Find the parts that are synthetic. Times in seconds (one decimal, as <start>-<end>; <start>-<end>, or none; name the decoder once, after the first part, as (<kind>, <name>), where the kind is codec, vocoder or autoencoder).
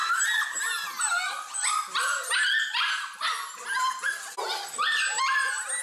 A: none